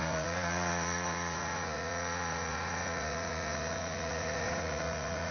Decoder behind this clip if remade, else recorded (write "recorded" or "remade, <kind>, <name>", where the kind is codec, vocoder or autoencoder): remade, vocoder, Vocos